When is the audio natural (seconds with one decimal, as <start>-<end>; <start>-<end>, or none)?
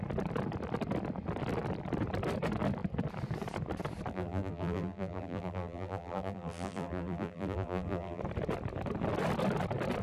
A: 0.0-4.1; 8.2-10.0